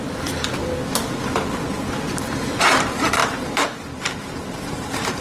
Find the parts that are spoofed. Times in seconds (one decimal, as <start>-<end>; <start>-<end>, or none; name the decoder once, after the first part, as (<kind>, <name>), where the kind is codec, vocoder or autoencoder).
0.0-0.6 (vocoder, BigVGAN v2); 1.5-5.2